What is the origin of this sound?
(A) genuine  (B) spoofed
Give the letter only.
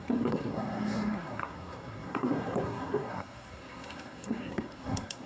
B